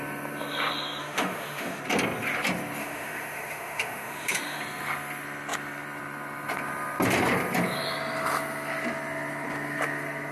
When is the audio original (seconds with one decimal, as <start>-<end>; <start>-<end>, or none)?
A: 0.0-1.0; 1.8-2.8; 4.6-10.3